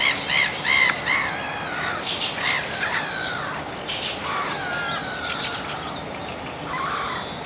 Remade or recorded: recorded